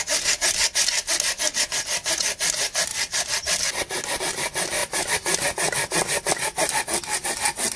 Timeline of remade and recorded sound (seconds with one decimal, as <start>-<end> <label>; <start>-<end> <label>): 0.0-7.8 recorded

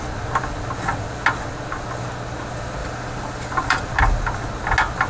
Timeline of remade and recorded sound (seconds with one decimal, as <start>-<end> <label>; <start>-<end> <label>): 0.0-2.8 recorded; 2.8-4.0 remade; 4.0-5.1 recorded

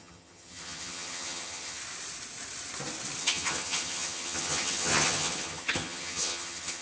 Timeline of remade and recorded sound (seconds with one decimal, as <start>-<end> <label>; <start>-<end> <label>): 0.0-1.8 remade; 1.8-3.2 recorded; 3.2-6.8 remade

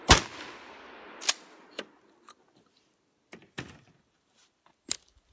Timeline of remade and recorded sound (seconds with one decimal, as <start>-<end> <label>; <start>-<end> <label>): 0.0-5.3 recorded

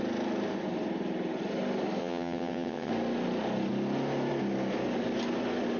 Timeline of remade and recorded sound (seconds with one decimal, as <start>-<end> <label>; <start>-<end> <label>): 0.0-2.0 recorded; 2.0-2.9 remade; 2.9-5.8 recorded

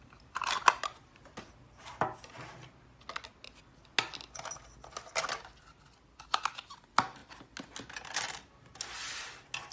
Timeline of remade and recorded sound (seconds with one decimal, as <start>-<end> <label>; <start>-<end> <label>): 0.0-9.7 recorded